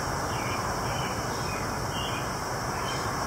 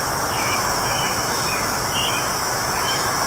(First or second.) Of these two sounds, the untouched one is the first